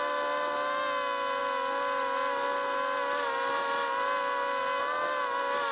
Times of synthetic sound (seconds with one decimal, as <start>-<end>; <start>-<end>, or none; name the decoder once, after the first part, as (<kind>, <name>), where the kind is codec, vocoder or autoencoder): none